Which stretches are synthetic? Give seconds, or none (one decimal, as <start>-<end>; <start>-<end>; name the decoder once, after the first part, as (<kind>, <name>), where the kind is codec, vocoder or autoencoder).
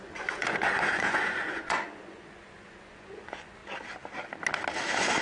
0.0-3.6 (vocoder, Vocos)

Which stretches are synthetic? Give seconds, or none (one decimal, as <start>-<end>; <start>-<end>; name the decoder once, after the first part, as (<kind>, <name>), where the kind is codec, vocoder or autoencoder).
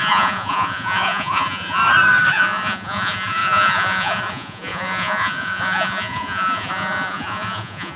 0.0-1.8 (vocoder, Vocos); 2.3-8.0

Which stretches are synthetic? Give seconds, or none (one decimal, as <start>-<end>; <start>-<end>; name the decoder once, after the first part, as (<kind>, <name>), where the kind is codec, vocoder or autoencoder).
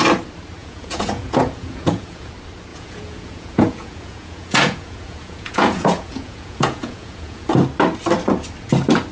0.6-2.3 (vocoder, Vocos); 2.7-7.5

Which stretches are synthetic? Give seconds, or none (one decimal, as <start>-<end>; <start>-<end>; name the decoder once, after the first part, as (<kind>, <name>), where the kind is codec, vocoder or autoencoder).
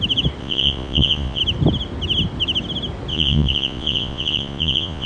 0.4-1.4 (vocoder, Vocos); 3.1-5.1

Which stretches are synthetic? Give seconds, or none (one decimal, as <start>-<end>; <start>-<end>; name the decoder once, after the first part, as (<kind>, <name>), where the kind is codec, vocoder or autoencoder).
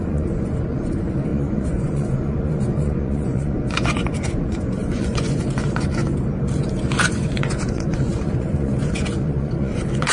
0.0-6.0 (vocoder, Vocos); 7.0-10.1